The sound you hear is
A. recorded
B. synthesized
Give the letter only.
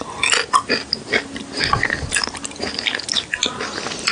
A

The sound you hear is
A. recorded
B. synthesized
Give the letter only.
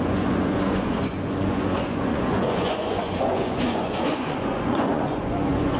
B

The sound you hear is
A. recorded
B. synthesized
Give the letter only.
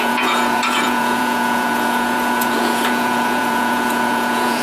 B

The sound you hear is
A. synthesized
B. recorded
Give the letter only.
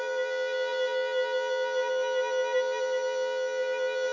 A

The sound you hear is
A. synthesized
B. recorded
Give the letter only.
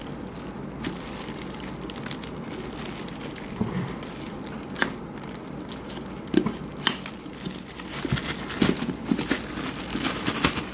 B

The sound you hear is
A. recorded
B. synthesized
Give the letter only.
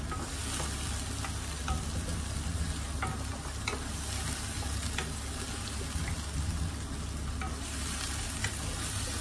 A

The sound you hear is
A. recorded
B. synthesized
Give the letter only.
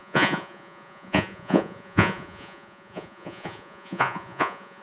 B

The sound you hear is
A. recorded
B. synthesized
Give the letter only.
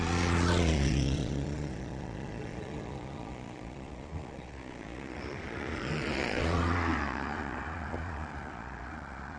B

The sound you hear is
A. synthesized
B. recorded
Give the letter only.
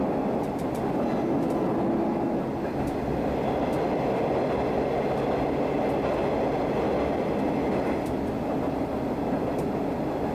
B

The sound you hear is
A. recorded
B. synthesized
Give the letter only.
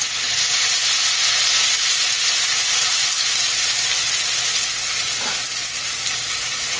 A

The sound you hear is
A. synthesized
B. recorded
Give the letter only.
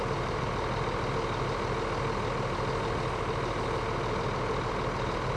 B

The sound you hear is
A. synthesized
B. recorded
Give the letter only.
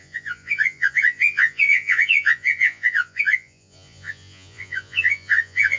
A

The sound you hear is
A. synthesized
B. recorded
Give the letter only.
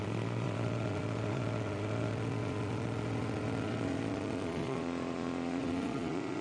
A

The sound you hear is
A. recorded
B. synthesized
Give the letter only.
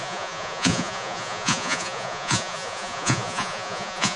B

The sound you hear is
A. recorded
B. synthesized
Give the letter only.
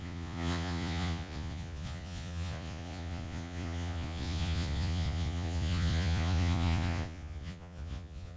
B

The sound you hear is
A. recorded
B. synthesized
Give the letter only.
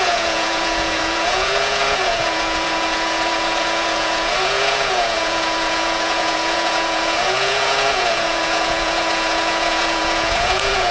B